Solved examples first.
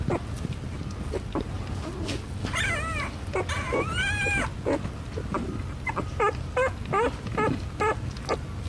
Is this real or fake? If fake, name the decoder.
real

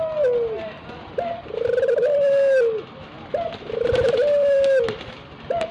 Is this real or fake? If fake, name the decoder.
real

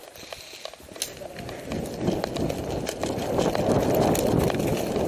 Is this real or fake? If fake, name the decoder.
real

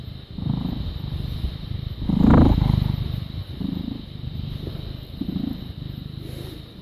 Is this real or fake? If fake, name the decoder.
real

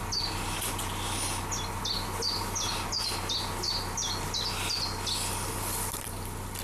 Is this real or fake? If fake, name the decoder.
real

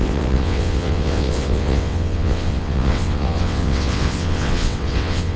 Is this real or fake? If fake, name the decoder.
fake, vocoder, WaveNeXt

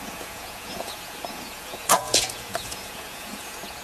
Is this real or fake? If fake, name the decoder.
fake, vocoder, Vocos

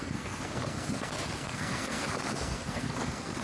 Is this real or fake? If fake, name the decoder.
fake, codec, SNAC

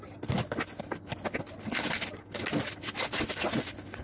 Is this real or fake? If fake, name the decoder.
real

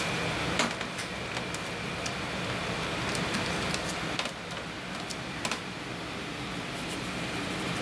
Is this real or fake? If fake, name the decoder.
real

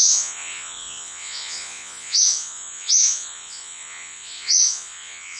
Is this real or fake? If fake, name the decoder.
fake, vocoder, Vocos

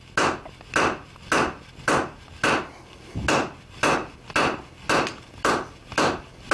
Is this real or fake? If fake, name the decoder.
real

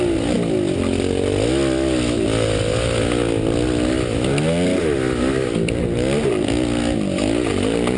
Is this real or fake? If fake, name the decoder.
real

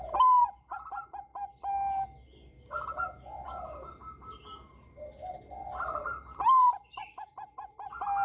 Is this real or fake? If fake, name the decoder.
real